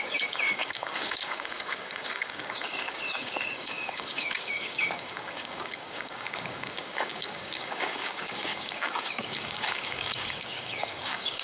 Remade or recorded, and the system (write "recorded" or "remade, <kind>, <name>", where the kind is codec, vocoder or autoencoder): remade, codec, DAC